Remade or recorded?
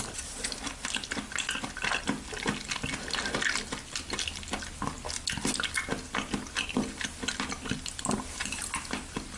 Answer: recorded